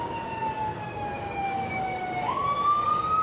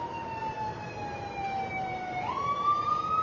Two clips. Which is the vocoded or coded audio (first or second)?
first